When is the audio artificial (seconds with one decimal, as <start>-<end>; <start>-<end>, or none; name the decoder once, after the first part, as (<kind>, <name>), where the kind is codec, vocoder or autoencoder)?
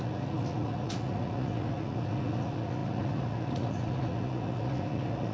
0.0-5.3 (vocoder, Vocos)